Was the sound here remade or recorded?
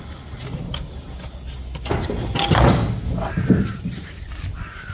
recorded